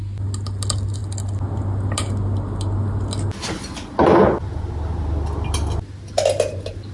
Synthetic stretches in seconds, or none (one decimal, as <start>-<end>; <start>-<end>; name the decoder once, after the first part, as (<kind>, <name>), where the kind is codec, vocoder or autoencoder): none